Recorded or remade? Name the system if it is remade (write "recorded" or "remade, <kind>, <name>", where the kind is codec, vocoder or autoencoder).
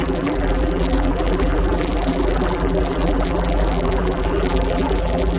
remade, vocoder, BigVGAN v2